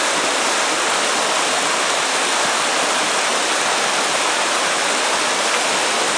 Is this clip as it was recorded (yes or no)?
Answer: yes